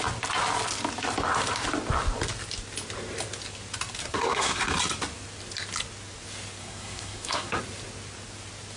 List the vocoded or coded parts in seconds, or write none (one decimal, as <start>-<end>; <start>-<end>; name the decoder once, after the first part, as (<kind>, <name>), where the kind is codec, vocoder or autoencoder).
4.0-4.6 (codec, SNAC); 6.6-7.6